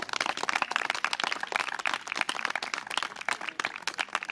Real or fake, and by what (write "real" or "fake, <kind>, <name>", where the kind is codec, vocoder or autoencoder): real